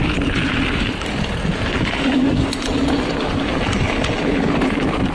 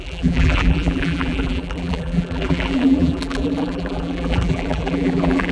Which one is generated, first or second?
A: second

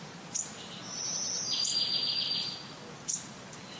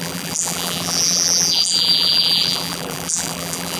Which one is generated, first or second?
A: second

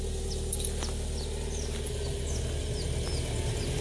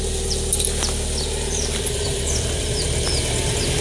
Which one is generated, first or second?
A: second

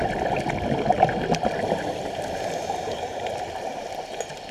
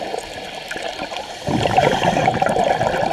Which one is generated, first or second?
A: second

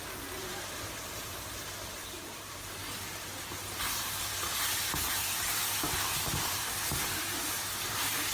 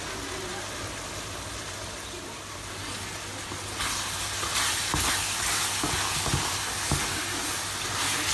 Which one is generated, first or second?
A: first